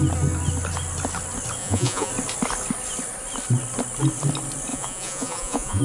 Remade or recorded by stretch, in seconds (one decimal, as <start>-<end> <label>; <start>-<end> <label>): 0.0-1.6 recorded; 1.6-2.1 remade; 2.1-4.7 recorded; 4.7-5.8 remade